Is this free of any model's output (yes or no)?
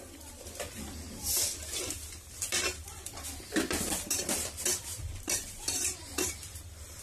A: no